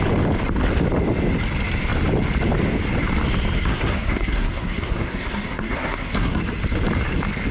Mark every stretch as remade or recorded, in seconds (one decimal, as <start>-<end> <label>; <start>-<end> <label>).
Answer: 0.0-3.7 recorded; 3.7-6.4 remade; 6.4-7.5 recorded